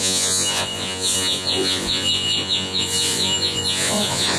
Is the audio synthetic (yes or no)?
yes